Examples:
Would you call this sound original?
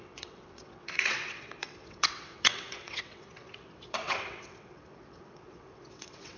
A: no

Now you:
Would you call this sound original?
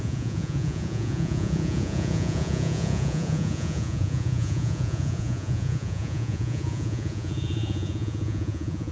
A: no